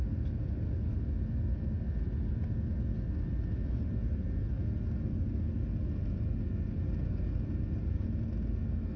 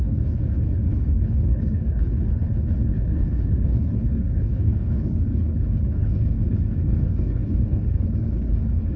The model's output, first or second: second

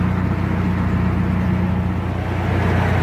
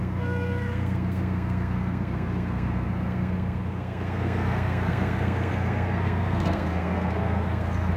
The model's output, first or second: second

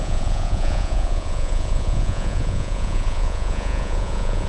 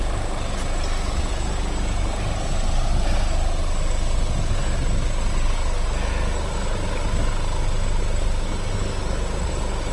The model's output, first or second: first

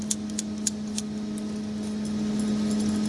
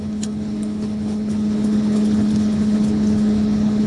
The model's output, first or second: second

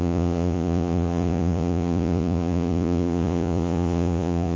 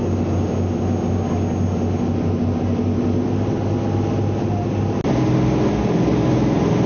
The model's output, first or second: first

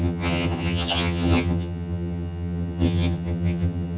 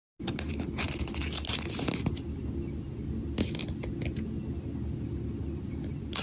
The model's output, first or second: first